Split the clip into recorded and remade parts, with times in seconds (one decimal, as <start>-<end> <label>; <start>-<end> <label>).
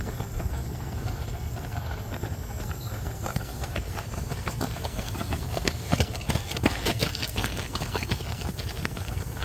0.0-9.4 remade